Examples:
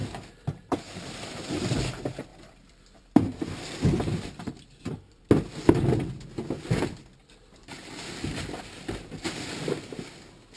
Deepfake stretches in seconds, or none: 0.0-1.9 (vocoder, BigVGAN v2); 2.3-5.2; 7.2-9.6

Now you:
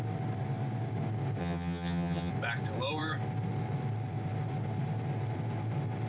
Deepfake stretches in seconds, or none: 1.4-2.3 (vocoder, HiFi-GAN)

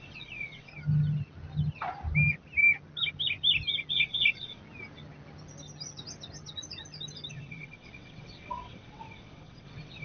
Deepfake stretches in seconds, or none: 0.0-0.7 (vocoder, WaveNeXt); 3.9-4.6; 7.3-10.0

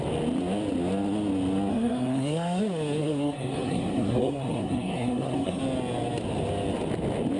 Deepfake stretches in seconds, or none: 1.7-2.6 (codec, SNAC); 3.0-5.6

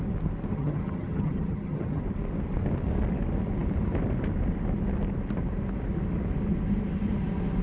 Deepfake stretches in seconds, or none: 0.5-2.0 (vocoder, HiFi-GAN)